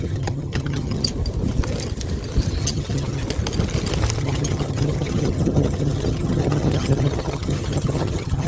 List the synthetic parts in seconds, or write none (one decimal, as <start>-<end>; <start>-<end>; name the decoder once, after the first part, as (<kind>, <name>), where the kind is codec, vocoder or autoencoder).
0.0-1.1 (vocoder, HiFi-GAN); 2.6-3.2; 4.2-8.5